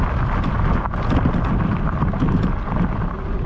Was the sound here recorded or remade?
recorded